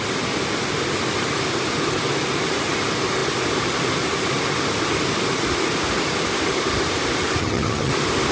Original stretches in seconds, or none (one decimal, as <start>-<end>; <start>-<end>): 0.0-7.4; 7.9-8.3